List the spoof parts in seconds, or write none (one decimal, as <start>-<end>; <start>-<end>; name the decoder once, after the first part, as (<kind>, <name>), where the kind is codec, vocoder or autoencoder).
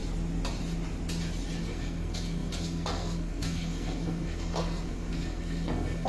1.6-6.1 (codec, SNAC)